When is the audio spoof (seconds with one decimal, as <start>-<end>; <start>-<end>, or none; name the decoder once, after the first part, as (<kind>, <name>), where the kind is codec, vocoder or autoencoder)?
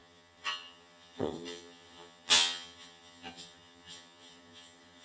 0.0-5.0 (vocoder, HiFi-GAN)